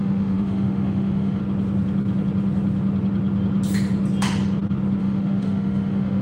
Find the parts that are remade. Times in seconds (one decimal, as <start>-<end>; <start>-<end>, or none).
0.0-1.4; 5.0-6.2